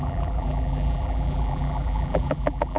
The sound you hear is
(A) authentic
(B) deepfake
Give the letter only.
B